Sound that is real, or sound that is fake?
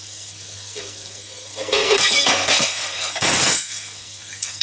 fake